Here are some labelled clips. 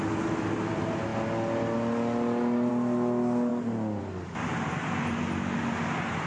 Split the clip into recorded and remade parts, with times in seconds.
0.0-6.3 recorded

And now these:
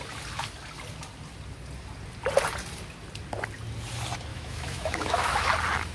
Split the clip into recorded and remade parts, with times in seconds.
0.0-4.3 recorded; 4.3-5.5 remade; 5.5-5.9 recorded

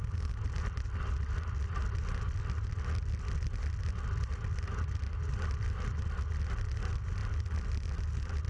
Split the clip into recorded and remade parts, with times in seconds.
0.0-8.5 recorded

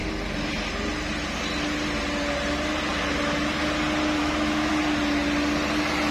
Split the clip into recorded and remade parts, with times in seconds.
0.0-4.2 recorded; 4.2-4.7 remade; 4.7-6.1 recorded

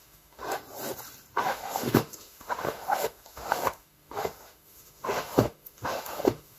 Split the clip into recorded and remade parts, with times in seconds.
0.0-0.4 remade; 0.4-1.4 recorded; 1.4-6.6 remade

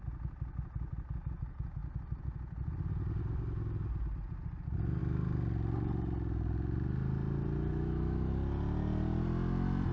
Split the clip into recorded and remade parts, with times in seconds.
0.0-7.7 recorded; 7.7-8.3 remade; 8.3-9.9 recorded

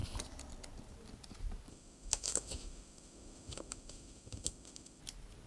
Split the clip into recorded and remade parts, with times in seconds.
0.0-1.7 recorded; 1.7-5.0 remade; 5.0-5.5 recorded